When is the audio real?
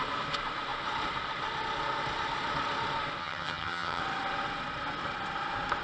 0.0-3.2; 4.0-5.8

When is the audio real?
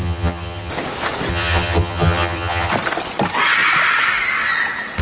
0.7-1.3; 2.7-5.0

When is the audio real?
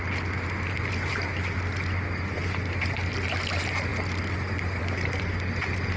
0.0-6.0